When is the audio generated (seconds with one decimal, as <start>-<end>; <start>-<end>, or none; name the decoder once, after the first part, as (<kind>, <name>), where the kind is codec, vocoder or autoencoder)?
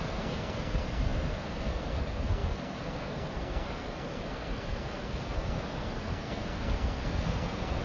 0.0-7.8 (codec, SNAC)